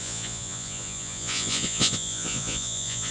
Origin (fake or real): fake